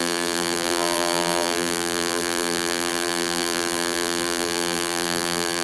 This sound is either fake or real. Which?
fake